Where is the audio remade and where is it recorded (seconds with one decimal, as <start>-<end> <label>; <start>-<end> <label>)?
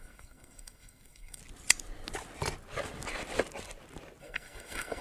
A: 0.0-1.4 remade; 1.4-4.2 recorded; 4.2-5.0 remade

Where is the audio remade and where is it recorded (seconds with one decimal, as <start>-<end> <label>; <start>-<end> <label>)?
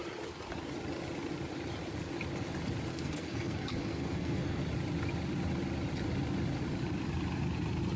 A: 0.0-2.9 recorded; 2.9-4.6 remade; 4.6-8.0 recorded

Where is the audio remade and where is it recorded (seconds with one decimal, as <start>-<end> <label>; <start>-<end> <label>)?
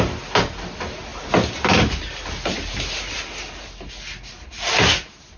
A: 0.0-5.4 recorded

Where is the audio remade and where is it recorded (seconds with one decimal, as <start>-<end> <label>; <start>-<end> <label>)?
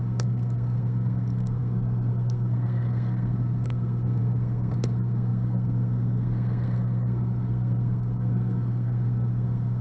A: 0.0-9.8 remade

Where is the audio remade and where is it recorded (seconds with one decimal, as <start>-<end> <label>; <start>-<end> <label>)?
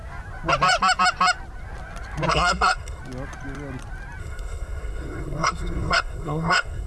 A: 0.0-2.3 recorded; 2.3-3.0 remade; 3.0-4.2 recorded; 4.2-6.9 remade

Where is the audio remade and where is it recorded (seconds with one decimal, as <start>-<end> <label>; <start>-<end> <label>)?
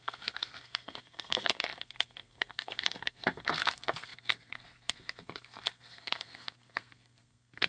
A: 0.0-7.7 remade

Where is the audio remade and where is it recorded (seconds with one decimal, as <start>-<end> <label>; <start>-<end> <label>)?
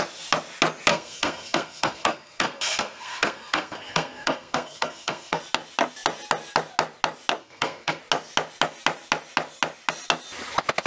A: 0.0-0.9 recorded; 0.9-5.4 remade; 5.4-7.4 recorded; 7.4-8.0 remade; 8.0-10.9 recorded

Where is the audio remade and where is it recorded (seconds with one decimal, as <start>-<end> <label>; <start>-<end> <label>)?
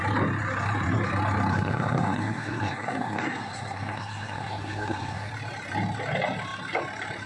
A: 0.0-1.5 recorded; 1.5-5.3 remade; 5.3-7.3 recorded